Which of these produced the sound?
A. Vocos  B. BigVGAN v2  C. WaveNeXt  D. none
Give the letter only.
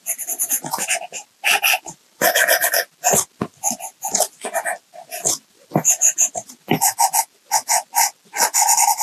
D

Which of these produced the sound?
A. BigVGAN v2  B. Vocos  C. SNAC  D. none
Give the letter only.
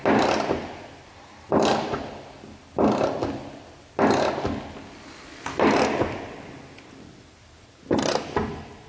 D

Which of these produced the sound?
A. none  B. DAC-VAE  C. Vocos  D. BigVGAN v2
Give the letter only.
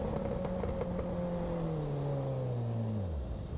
A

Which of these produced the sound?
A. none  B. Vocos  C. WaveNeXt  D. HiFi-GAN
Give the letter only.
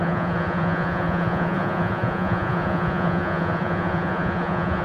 B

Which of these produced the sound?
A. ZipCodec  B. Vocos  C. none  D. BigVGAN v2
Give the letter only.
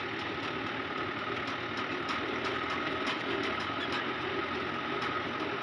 C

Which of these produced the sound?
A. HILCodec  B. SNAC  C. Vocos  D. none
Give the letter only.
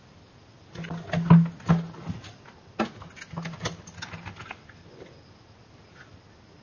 D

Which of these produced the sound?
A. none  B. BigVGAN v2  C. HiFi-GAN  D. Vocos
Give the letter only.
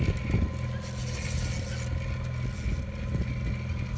A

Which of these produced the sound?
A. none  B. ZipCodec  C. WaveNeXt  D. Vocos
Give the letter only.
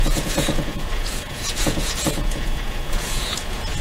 D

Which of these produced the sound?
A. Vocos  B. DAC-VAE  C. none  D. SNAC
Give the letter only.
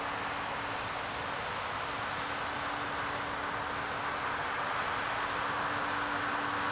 C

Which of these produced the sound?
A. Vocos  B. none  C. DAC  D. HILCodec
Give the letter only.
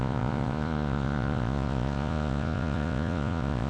A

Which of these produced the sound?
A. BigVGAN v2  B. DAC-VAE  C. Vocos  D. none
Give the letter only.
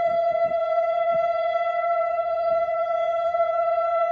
C